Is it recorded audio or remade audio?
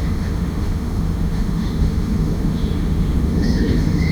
remade